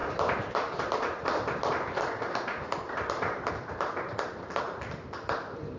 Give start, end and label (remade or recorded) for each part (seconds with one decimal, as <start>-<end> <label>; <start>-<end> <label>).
0.0-3.5 remade; 3.5-5.8 recorded